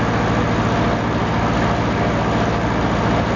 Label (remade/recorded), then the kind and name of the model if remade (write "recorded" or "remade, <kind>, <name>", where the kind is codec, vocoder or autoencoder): recorded